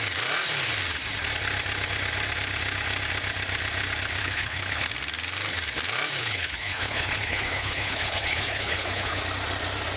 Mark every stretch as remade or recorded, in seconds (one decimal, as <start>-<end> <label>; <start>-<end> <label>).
0.0-4.2 recorded; 4.2-4.9 remade; 4.9-6.2 recorded; 6.2-9.2 remade; 9.2-10.0 recorded